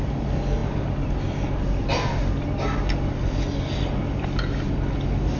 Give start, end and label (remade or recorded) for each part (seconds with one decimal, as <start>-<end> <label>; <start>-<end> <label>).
0.0-5.4 recorded